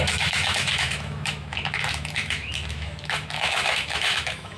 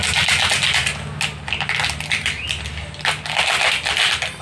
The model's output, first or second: first